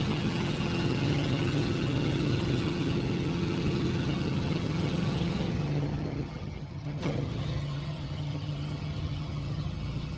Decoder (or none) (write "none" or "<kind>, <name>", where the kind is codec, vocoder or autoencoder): vocoder, HiFi-GAN